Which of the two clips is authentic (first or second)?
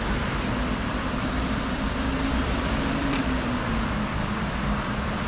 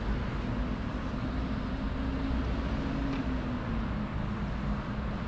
second